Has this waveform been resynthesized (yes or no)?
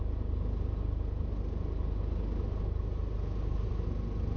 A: no